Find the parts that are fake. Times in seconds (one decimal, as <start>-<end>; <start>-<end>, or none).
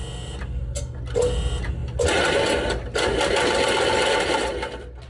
none